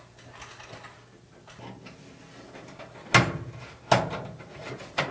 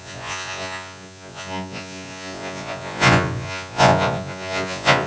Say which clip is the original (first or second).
first